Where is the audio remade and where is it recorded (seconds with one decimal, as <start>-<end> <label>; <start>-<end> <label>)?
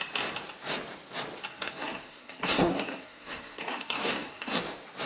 0.0-1.5 recorded; 1.5-4.6 remade; 4.6-5.1 recorded